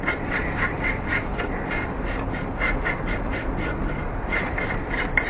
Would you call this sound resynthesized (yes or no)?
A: no